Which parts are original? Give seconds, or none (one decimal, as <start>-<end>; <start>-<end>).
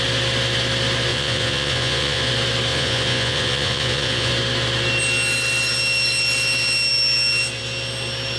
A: 0.0-1.1; 2.3-2.7; 4.3-8.4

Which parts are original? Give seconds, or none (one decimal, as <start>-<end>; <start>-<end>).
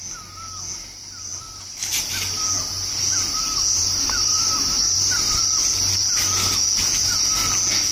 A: 0.0-3.8; 5.9-7.9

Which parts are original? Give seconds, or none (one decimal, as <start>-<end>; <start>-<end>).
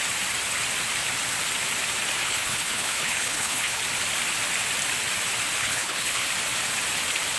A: 0.0-2.2; 3.8-5.6; 6.3-7.4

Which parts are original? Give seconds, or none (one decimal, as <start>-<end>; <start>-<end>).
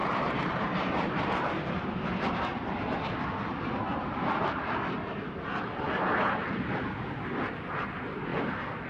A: 1.6-3.9; 5.4-8.9